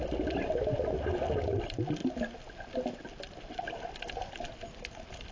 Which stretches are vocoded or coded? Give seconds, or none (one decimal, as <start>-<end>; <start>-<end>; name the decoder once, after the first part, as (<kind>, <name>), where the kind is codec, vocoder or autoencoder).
none